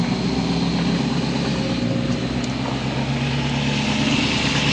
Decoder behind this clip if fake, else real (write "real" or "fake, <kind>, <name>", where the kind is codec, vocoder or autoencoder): real